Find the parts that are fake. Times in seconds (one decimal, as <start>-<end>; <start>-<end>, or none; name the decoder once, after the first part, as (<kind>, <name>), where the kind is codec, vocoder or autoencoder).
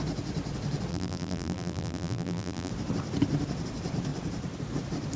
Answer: 0.9-2.7 (vocoder, BigVGAN v2)